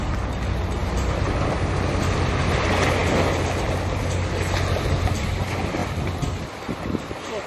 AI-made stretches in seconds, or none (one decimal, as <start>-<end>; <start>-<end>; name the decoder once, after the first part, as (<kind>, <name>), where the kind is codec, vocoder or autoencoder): none